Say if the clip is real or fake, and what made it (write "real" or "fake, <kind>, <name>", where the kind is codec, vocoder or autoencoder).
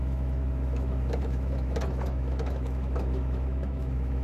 fake, autoencoder, DAC-VAE